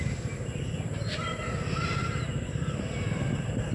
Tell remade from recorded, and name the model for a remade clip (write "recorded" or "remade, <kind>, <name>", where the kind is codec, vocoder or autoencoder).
remade, vocoder, BigVGAN v2